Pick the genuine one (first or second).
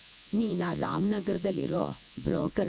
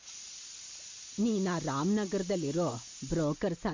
second